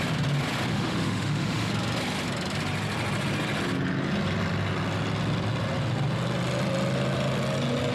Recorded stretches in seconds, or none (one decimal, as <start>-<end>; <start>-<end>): 0.0-0.7; 1.7-7.9